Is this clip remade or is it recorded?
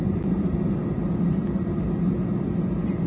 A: recorded